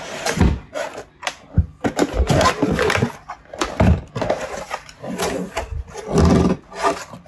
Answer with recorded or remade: recorded